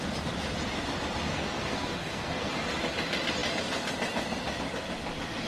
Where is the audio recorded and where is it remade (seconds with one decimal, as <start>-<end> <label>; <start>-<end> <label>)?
0.0-1.3 recorded; 1.3-2.5 remade; 2.5-5.5 recorded